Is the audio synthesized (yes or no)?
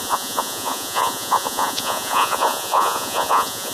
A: yes